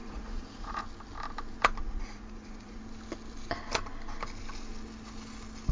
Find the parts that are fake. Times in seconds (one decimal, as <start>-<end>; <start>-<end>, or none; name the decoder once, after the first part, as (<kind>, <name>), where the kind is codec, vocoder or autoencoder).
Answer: 0.0-0.8 (vocoder, Vocos); 1.8-2.8